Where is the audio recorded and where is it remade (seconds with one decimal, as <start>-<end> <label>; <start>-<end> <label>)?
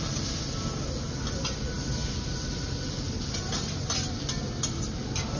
0.0-5.4 recorded